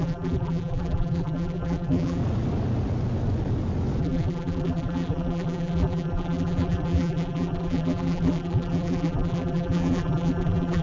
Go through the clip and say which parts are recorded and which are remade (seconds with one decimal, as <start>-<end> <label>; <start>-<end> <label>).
0.0-2.2 remade; 2.2-4.0 recorded; 4.0-10.8 remade